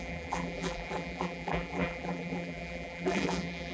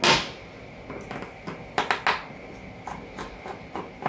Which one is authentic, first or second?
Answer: second